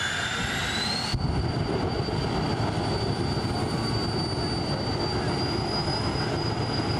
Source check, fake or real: real